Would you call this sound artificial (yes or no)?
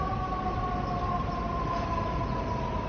no